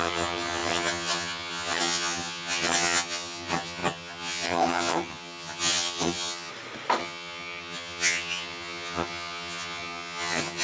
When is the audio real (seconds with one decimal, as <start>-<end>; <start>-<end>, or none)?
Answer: 6.5-7.0